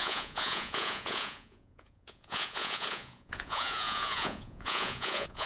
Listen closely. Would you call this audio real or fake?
fake